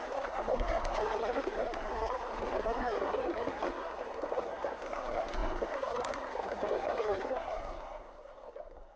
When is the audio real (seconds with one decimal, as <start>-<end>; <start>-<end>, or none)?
none